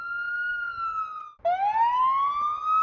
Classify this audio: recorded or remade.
recorded